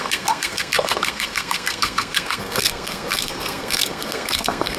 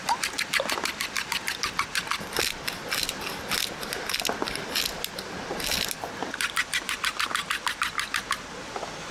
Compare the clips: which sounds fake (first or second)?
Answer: first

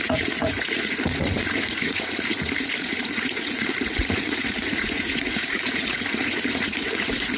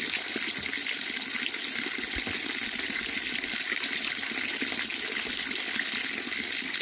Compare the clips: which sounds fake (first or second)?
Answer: first